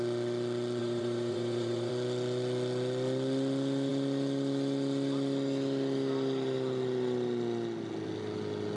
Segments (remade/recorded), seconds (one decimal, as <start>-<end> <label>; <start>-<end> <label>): 0.0-0.8 recorded; 0.8-1.9 remade; 1.9-8.8 recorded